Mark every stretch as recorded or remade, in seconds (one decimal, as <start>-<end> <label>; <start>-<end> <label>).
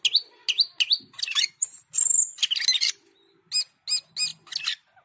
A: 0.0-5.0 recorded